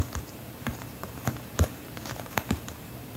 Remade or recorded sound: remade